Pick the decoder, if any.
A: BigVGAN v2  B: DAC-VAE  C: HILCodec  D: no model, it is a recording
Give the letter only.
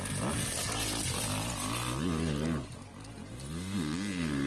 D